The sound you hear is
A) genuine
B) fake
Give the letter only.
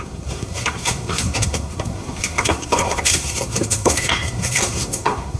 B